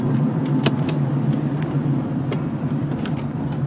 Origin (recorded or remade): remade